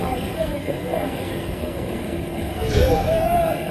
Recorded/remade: remade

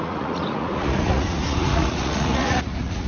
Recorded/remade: remade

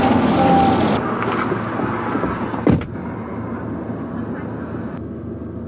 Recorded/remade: recorded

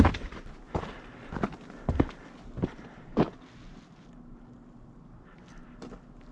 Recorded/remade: recorded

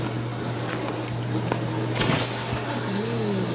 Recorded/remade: recorded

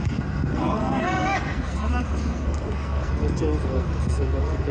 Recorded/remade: remade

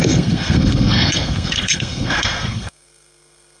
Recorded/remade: remade